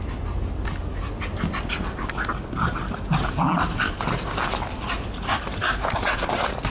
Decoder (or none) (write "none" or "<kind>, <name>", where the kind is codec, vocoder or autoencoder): none